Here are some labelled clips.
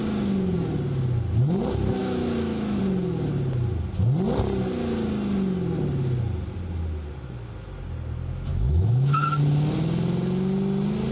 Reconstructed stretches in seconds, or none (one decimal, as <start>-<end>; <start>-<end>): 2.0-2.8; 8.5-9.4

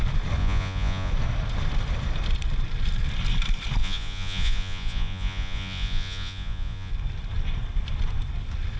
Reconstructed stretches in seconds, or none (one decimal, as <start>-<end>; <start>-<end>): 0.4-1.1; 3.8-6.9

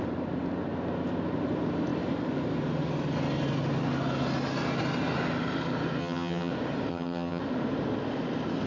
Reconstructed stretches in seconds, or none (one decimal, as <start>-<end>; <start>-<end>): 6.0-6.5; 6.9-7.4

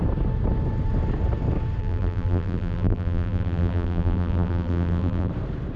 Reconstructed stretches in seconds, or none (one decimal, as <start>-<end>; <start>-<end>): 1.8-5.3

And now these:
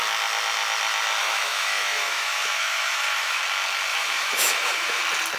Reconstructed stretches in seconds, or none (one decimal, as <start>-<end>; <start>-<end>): 1.2-3.4; 3.9-5.0

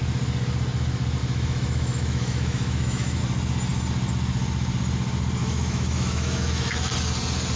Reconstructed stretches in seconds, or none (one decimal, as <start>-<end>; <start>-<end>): 1.2-3.2; 5.4-6.9

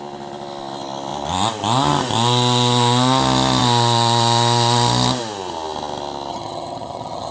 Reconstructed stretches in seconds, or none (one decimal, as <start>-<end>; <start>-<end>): 6.3-7.3